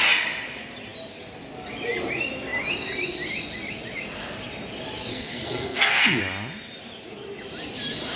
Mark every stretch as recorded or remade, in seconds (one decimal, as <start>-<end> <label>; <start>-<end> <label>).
0.0-5.1 recorded; 5.1-6.2 remade; 6.2-8.2 recorded